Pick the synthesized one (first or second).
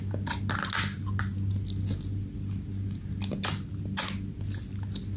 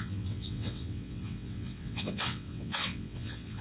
second